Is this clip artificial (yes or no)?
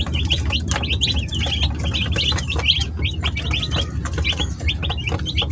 no